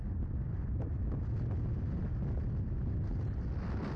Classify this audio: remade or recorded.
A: recorded